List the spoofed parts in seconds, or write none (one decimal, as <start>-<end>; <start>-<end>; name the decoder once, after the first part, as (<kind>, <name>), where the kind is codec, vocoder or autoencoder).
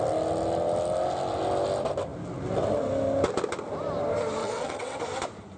4.4-5.0 (vocoder, WaveNeXt)